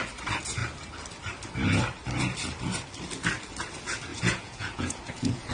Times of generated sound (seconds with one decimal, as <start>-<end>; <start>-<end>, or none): 4.1-5.5